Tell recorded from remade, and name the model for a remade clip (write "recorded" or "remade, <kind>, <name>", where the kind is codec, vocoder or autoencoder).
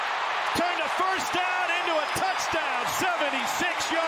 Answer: recorded